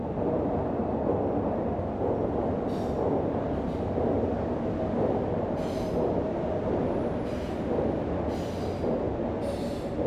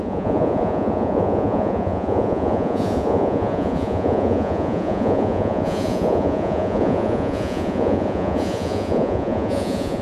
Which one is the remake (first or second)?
second